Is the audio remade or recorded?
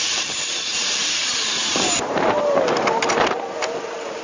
remade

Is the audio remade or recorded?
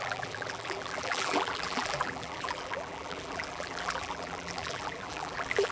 remade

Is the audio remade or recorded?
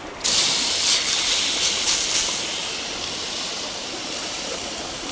recorded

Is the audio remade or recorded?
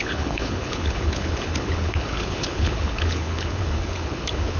remade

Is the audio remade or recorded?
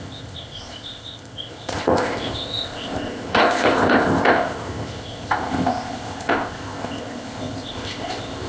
remade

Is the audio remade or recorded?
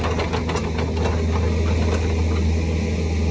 recorded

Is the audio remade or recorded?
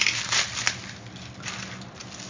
recorded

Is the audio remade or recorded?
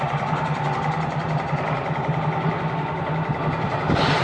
recorded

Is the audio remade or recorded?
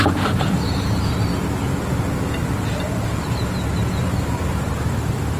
remade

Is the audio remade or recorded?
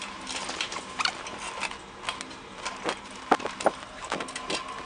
recorded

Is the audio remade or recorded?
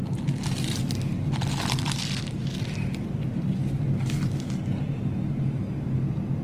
recorded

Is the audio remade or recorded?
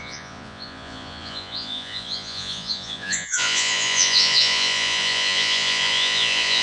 remade